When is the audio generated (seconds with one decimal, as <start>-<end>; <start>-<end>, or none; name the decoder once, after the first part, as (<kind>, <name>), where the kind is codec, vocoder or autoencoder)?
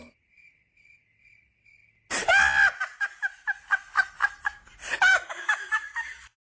5.1-5.8 (autoencoder, DAC-VAE)